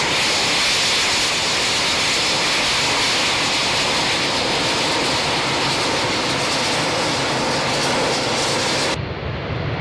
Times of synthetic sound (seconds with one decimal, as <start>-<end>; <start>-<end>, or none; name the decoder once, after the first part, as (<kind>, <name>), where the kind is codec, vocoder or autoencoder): none